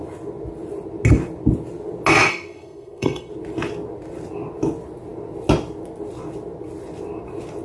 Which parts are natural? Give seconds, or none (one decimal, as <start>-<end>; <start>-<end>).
0.0-2.3; 3.3-7.6

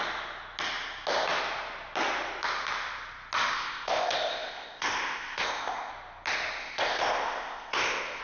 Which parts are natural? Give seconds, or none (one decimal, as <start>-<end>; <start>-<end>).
0.0-3.5; 5.9-6.6

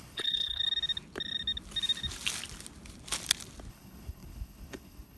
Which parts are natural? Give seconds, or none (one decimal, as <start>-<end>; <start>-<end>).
0.6-3.7